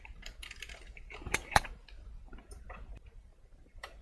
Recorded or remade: remade